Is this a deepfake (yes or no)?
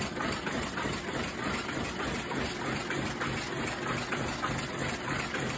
no